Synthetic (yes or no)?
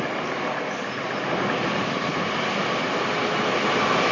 no